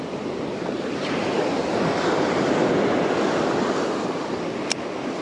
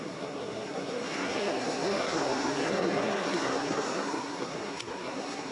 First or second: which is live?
first